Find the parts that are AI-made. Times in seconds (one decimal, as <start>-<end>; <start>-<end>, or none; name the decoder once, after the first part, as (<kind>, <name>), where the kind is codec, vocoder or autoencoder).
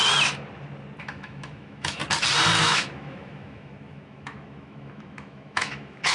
1.0-2.0 (autoencoder, DAC-VAE); 2.6-6.1